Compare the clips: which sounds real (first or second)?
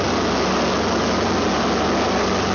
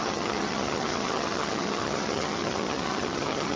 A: first